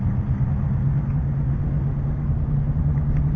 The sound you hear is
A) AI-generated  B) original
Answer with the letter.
B